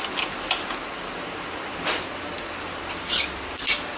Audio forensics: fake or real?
real